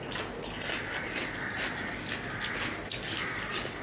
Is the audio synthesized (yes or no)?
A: no